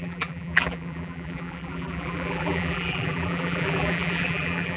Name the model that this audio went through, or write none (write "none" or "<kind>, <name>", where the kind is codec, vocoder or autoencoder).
vocoder, BigVGAN v2